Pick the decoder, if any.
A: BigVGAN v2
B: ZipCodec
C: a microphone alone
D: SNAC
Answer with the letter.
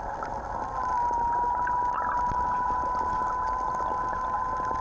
C